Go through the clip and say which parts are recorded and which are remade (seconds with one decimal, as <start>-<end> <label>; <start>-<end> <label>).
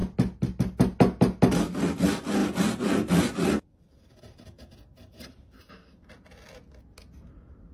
0.0-7.7 recorded